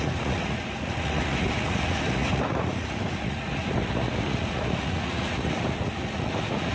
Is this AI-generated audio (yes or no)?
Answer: yes